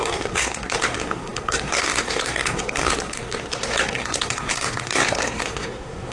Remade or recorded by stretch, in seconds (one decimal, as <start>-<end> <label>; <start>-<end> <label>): 0.0-6.1 remade